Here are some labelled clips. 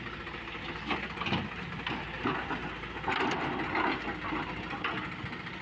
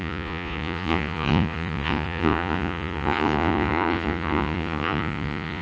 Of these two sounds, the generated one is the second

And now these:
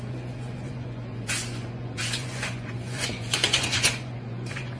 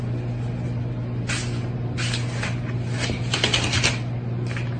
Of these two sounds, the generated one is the first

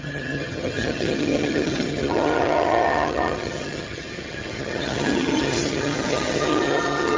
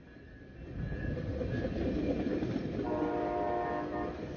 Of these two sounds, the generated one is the first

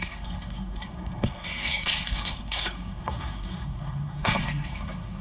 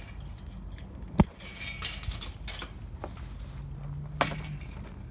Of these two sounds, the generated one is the first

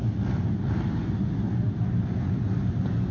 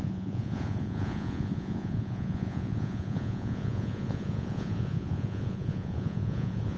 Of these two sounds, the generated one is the second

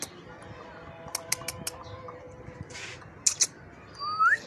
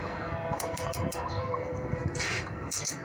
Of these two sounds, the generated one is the second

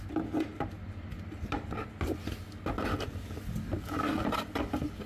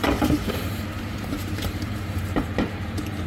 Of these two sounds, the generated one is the second